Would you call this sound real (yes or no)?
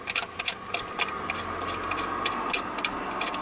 yes